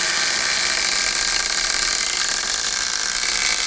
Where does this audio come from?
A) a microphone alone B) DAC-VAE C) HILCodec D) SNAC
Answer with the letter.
A